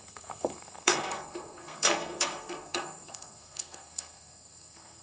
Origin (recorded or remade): remade